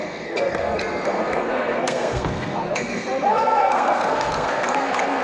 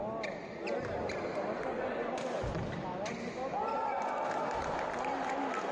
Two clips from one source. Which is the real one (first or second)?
second